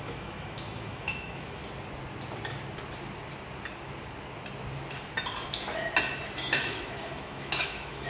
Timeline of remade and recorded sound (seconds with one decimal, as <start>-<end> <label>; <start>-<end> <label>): 0.0-1.6 remade; 1.6-6.5 recorded; 6.5-8.1 remade